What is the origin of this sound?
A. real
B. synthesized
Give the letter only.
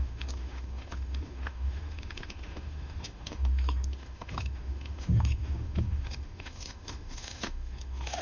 B